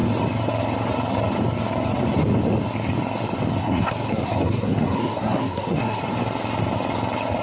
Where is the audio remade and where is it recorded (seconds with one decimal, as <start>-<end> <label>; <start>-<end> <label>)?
0.0-3.6 recorded; 3.6-6.0 remade; 6.0-7.4 recorded